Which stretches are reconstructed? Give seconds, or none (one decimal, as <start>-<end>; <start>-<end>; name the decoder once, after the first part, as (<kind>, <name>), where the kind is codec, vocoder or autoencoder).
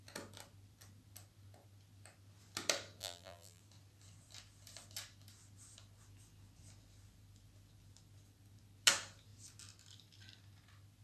3.0-3.6 (vocoder, BigVGAN v2)